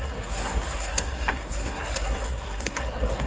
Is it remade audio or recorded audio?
remade